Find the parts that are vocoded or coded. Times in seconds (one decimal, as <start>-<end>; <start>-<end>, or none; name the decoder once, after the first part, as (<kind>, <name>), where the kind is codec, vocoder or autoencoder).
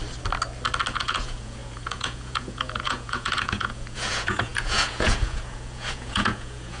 0.9-6.8 (vocoder, Vocos)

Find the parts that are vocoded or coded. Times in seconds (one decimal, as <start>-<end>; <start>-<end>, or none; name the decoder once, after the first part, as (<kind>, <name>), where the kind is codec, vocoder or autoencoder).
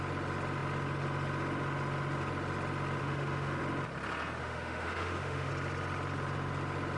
3.0-3.6 (autoencoder, DAC-VAE); 4.4-5.5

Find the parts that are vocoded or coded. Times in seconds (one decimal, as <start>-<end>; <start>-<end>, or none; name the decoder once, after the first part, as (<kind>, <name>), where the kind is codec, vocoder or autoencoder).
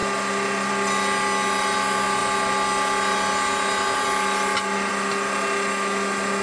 none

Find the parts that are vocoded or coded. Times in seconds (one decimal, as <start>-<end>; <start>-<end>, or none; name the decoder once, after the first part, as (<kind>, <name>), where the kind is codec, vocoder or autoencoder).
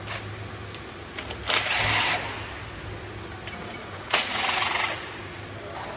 3.7-5.2 (vocoder, Vocos)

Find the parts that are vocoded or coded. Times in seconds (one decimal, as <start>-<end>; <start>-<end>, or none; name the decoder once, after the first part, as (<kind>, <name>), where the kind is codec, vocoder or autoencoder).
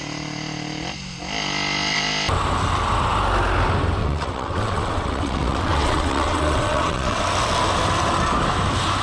4.0-7.2 (vocoder, WaveNeXt)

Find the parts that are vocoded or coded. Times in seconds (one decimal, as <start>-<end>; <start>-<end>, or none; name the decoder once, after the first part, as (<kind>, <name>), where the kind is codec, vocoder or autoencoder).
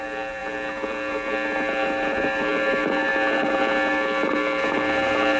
none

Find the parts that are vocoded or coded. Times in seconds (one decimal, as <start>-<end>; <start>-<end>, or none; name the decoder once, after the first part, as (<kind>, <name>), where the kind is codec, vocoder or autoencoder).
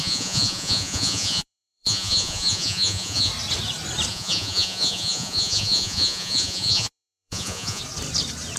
0.0-3.3 (vocoder, Vocos); 4.1-7.8